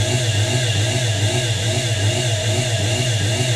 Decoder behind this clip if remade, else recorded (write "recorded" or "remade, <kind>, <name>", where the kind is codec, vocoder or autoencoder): recorded